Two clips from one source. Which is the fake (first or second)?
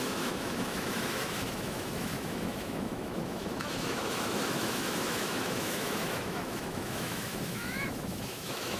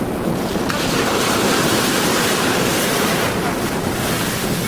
first